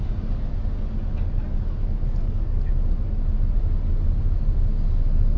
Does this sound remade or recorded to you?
recorded